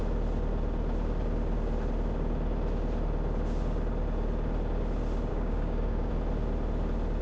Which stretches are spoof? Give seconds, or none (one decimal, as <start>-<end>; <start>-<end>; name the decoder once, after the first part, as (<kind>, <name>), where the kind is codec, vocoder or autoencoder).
5.3-6.1 (codec, DAC)